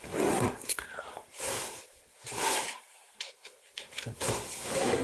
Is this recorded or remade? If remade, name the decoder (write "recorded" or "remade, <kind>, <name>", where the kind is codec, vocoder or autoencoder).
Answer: remade, codec, SNAC